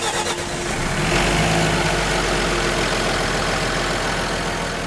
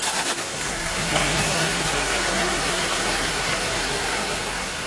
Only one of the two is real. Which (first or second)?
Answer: first